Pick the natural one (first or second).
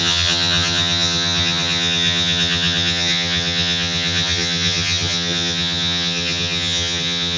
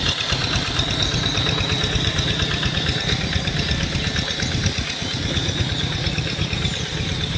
second